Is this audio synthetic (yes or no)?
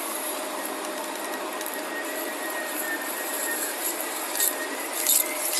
yes